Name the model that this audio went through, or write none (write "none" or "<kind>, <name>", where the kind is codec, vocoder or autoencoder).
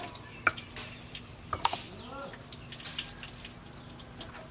none